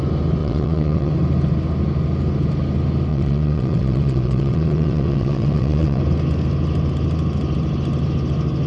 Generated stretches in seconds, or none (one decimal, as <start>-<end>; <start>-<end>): 0.4-1.1; 3.1-6.0